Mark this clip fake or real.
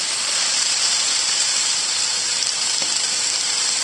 real